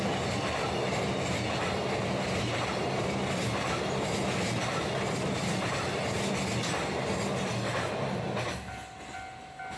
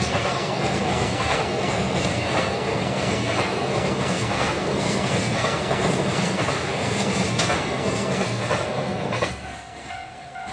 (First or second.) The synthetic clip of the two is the second